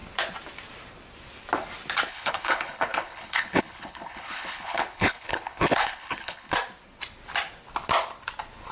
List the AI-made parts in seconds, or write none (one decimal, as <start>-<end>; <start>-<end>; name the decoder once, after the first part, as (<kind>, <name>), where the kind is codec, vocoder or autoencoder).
2.1-6.5 (codec, HILCodec)